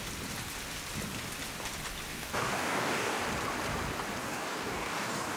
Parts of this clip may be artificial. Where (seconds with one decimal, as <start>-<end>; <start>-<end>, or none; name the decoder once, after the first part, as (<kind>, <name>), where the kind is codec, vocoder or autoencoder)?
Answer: 2.1-3.2 (codec, DAC); 4.2-5.4